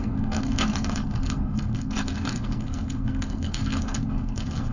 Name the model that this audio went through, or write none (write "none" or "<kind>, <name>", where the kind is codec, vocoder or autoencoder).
codec, SNAC